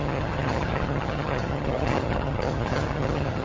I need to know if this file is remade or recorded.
remade